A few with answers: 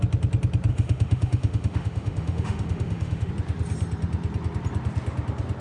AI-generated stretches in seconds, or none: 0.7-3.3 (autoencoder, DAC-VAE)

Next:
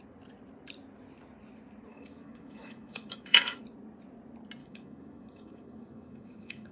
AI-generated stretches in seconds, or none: 1.9-3.6 (autoencoder, DAC-VAE); 4.6-6.7

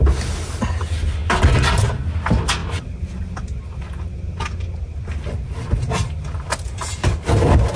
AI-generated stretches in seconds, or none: none

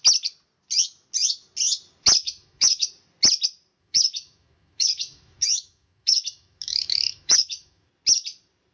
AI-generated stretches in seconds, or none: 2.2-2.9 (autoencoder, DAC-VAE); 3.8-7.9

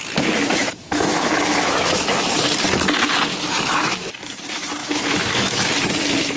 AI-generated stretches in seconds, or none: 0.6-2.3 (autoencoder, DAC-VAE); 3.3-4.1; 4.8-5.7